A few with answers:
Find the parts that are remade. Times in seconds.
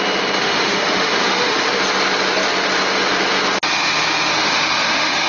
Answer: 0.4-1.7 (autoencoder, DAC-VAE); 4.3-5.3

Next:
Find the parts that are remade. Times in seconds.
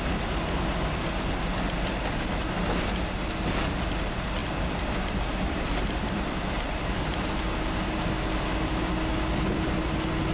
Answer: 4.4-7.4 (vocoder, BigVGAN v2)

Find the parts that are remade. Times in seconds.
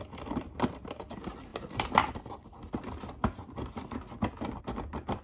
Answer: none